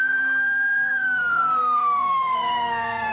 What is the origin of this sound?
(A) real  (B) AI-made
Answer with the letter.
B